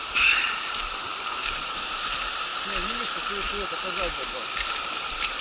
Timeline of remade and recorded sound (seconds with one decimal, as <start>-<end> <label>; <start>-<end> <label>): 0.0-2.5 remade; 2.5-4.7 recorded; 4.7-5.4 remade